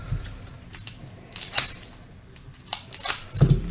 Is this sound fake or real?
real